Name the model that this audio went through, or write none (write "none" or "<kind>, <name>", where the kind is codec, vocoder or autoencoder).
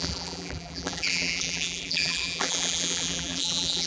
vocoder, BigVGAN v2